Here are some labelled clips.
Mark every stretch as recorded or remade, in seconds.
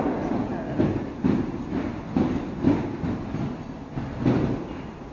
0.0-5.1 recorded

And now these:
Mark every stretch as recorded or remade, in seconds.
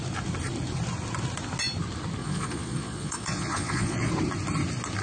0.0-2.2 recorded; 2.2-4.1 remade; 4.1-5.0 recorded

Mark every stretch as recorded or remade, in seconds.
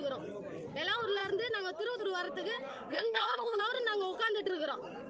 0.0-2.7 recorded; 2.7-3.6 remade; 3.6-5.1 recorded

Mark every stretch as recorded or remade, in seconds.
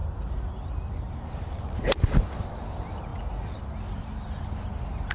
0.0-0.7 remade; 0.7-5.1 recorded